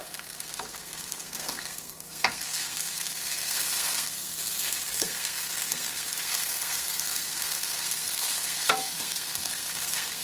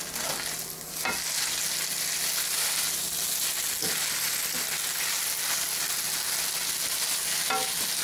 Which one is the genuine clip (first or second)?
second